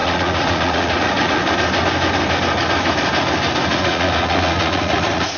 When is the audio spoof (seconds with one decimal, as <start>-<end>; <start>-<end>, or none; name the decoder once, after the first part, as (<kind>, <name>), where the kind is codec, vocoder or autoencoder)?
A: 0.0-1.4 (vocoder, Vocos); 3.7-5.4